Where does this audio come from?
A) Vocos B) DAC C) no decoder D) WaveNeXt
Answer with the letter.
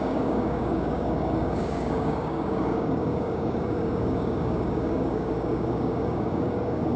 B